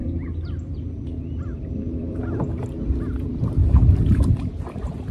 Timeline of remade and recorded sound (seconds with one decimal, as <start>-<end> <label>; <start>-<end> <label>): 0.0-2.2 remade; 2.2-3.6 recorded; 3.6-4.5 remade; 4.5-5.1 recorded